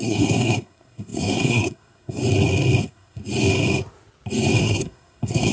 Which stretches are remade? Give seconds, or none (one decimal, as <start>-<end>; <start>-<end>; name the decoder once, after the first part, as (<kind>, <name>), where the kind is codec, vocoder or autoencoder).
0.0-2.2 (codec, SNAC); 2.8-3.2; 4.6-5.5